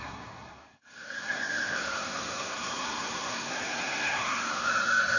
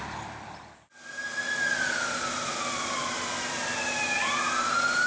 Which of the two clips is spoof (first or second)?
first